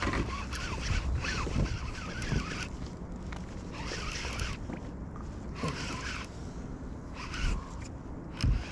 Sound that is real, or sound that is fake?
real